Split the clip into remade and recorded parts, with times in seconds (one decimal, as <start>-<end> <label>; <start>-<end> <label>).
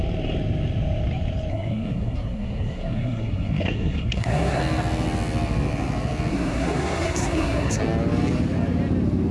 0.0-1.5 recorded; 1.5-4.6 remade; 4.6-6.3 recorded; 6.3-7.8 remade; 7.8-9.3 recorded